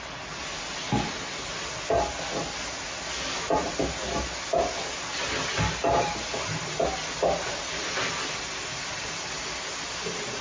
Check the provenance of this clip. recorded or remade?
recorded